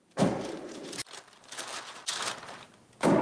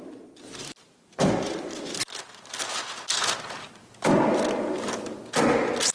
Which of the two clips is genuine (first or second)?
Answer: second